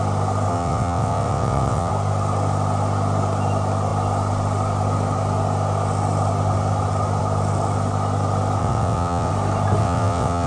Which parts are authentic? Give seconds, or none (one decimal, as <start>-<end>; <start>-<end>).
0.0-0.5; 1.9-8.6; 9.3-9.8